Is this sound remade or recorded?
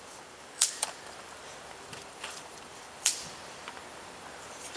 remade